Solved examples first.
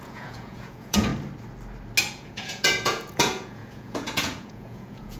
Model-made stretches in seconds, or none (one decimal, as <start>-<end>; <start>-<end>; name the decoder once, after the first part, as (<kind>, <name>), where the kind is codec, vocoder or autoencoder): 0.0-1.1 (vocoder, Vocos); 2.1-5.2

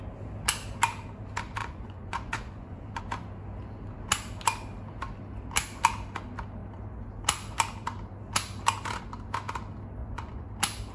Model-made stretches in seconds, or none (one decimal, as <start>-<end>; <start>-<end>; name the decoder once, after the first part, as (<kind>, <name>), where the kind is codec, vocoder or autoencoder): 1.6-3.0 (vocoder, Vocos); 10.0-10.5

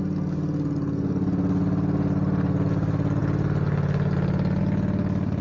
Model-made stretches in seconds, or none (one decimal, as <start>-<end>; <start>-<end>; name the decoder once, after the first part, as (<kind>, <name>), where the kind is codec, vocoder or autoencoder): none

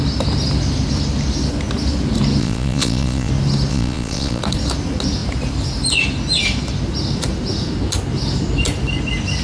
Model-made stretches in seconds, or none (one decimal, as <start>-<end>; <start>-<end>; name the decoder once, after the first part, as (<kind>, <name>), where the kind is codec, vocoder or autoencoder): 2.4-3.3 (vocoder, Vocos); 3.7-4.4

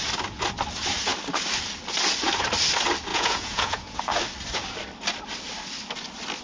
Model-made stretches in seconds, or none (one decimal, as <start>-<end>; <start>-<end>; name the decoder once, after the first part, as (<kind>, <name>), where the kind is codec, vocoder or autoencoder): 3.1-4.0 (vocoder, Vocos)

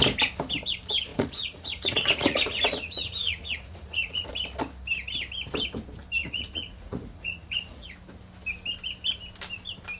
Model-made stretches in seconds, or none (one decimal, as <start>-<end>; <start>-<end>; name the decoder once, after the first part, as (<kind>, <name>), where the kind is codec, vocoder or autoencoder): 1.1-4.3 (vocoder, Vocos); 6.2-8.1